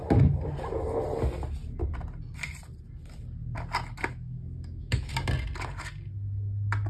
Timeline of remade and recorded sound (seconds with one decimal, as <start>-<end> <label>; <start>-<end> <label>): 0.0-4.1 recorded; 4.1-5.1 remade; 5.1-6.9 recorded